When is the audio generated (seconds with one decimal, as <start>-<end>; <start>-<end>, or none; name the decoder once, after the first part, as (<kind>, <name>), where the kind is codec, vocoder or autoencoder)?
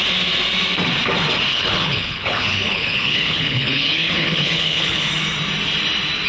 1.5-5.1 (codec, HILCodec)